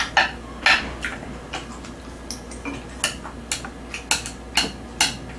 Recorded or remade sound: recorded